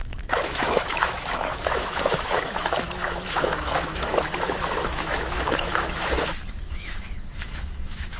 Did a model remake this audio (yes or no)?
yes